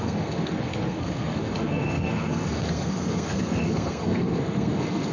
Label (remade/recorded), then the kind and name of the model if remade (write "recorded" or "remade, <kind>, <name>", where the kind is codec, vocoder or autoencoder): remade, codec, SNAC